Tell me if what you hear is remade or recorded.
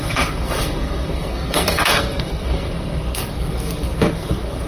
remade